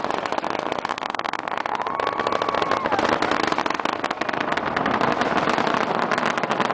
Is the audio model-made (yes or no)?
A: no